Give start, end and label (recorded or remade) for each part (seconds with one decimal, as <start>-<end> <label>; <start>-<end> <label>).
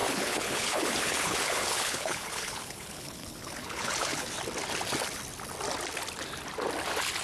0.0-4.3 remade; 4.3-7.2 recorded